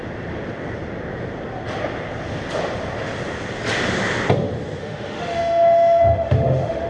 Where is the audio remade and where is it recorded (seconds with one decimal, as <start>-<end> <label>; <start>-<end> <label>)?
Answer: 0.0-4.8 recorded; 4.8-6.9 remade